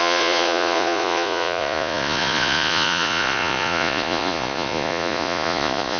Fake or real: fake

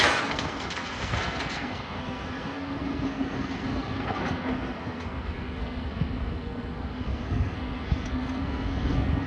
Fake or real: fake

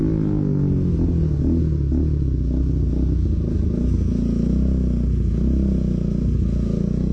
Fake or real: real